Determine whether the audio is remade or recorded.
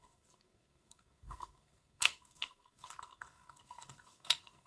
remade